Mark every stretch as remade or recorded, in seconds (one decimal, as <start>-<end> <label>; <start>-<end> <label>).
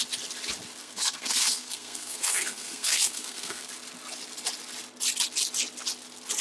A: 0.0-0.8 recorded; 0.8-3.7 remade; 3.7-6.4 recorded